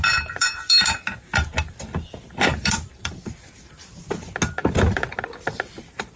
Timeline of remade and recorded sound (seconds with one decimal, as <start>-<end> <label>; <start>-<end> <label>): 0.0-0.4 recorded; 0.4-4.1 remade; 4.1-6.2 recorded